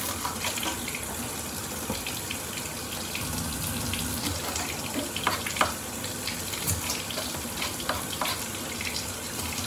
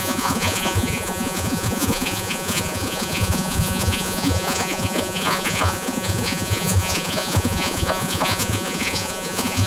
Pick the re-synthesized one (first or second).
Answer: second